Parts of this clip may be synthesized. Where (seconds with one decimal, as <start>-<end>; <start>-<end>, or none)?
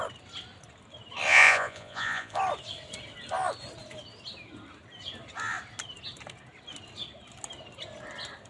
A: 1.3-2.4